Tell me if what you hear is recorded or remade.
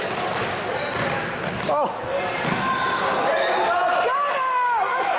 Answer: recorded